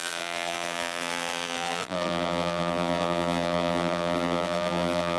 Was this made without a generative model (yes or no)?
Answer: no